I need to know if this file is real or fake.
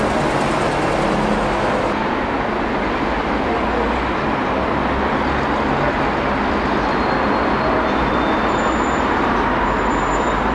real